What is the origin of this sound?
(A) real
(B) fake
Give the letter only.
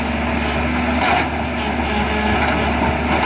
A